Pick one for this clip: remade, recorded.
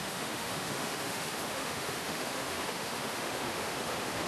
remade